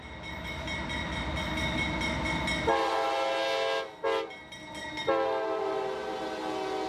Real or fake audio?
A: real